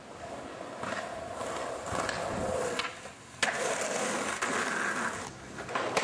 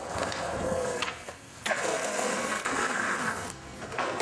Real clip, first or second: first